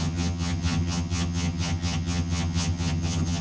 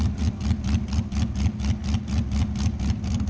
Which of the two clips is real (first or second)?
second